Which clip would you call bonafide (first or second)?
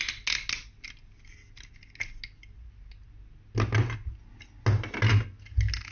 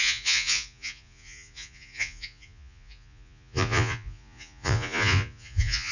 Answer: first